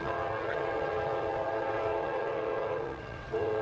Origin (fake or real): fake